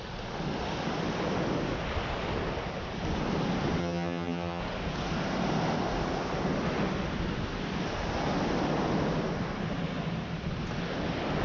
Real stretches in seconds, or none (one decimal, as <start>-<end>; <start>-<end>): 0.0-3.8; 4.6-11.4